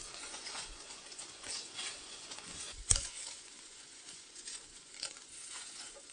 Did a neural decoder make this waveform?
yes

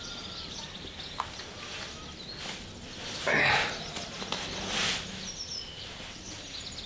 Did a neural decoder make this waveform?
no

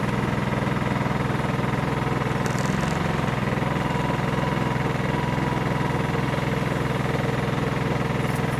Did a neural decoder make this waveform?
yes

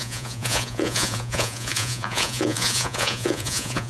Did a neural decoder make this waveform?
yes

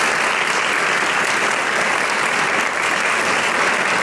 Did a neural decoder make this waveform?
no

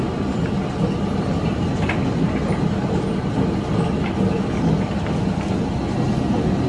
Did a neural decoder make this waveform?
no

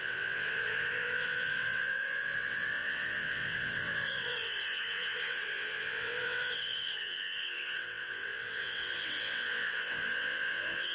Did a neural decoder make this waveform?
yes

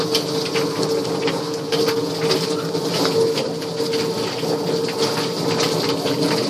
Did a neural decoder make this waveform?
no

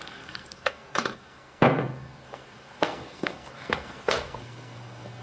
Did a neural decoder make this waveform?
yes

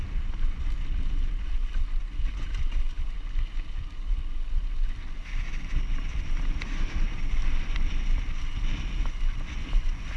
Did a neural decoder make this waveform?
no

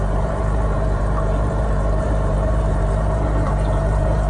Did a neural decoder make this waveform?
yes